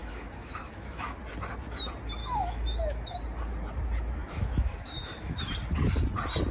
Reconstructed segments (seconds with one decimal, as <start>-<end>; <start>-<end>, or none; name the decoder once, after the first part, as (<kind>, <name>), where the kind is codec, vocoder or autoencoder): 0.0-1.2 (autoencoder, DAC-VAE); 2.2-3.2; 4.2-5.5